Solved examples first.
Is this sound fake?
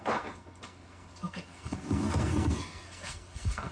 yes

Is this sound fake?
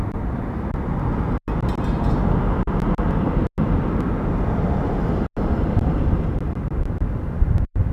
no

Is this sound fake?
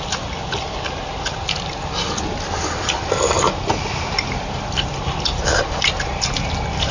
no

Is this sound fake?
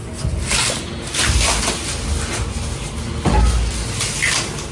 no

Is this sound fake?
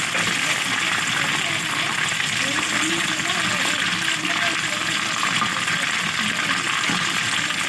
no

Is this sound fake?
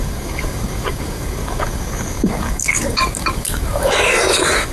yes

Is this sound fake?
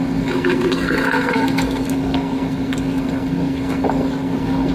yes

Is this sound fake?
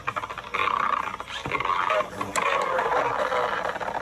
no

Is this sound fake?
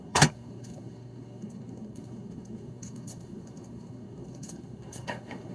yes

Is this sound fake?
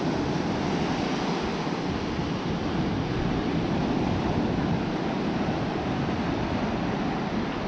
no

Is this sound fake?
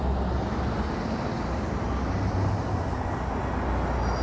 no